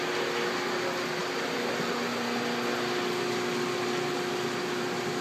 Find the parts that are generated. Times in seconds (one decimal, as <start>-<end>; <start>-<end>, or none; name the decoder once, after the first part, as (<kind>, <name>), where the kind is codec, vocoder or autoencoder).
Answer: none